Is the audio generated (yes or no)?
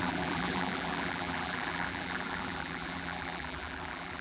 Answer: yes